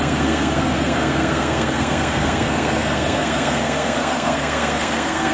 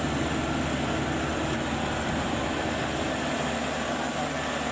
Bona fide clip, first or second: second